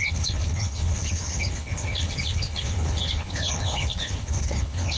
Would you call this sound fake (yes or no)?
yes